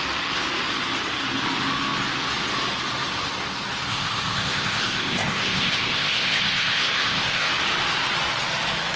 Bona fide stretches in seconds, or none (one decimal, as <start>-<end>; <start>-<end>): 0.0-3.9; 7.5-9.0